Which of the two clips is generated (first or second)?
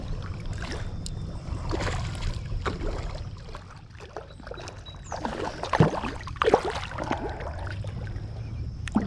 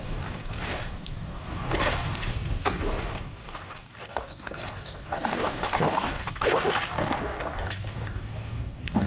second